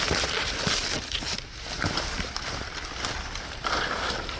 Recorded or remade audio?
recorded